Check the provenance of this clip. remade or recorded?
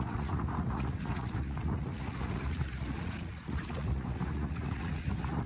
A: remade